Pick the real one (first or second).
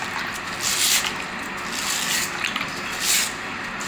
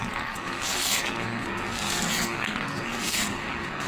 first